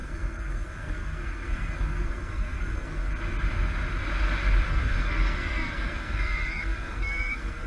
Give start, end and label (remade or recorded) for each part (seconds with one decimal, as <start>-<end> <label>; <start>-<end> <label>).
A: 0.0-3.1 remade; 3.1-4.7 recorded; 4.7-7.7 remade